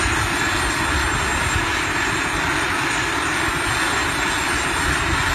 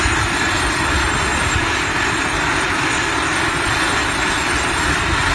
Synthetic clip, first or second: second